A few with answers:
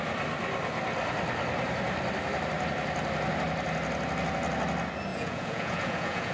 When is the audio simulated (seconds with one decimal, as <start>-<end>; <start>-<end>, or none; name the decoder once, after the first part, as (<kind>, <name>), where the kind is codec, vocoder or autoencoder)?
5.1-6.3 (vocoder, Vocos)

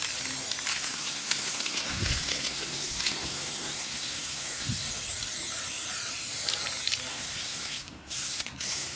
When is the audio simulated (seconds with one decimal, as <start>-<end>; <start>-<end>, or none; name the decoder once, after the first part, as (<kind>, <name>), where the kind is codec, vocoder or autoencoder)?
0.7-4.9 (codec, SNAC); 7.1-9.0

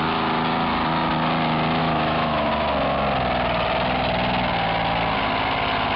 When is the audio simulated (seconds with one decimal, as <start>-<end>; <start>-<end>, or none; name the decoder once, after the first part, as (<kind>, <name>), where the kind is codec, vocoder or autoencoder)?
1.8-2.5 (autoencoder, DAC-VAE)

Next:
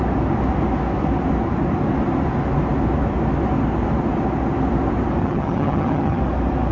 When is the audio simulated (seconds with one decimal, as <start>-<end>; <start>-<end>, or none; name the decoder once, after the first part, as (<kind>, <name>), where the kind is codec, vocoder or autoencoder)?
5.2-6.2 (vocoder, HiFi-GAN)

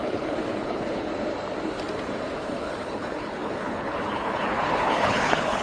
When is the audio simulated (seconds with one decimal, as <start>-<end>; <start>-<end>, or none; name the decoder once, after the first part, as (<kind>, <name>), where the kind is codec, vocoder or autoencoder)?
0.0-1.1 (codec, HILCodec); 2.4-5.6